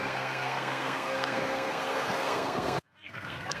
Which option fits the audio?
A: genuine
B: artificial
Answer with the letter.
B